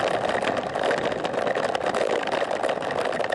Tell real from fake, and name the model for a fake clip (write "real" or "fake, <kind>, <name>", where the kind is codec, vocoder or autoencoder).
real